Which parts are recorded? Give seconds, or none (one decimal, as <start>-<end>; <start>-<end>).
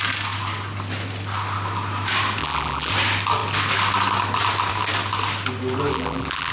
0.0-2.4; 2.9-5.9